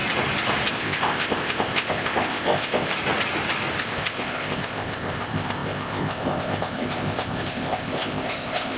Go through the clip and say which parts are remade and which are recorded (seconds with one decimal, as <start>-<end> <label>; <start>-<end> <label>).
0.0-0.7 recorded; 0.7-2.9 remade; 2.9-3.8 recorded; 3.8-8.8 remade